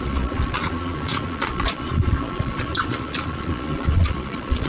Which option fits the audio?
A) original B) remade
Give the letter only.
B